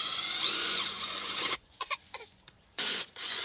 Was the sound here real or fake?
fake